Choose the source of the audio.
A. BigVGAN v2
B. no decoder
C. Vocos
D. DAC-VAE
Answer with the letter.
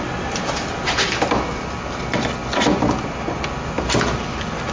B